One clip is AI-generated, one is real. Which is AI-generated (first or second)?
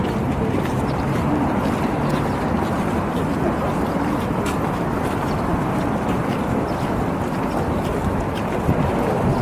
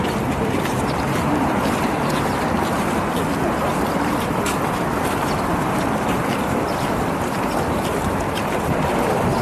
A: second